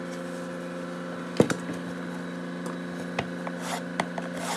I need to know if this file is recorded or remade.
recorded